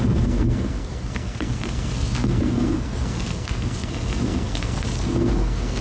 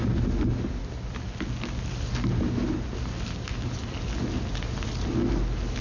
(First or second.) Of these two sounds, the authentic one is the second